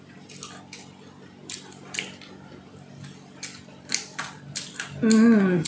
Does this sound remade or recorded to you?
recorded